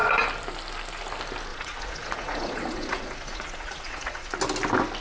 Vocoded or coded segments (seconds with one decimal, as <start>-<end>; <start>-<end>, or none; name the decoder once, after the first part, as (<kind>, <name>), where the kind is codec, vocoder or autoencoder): 1.5-4.3 (vocoder, Vocos)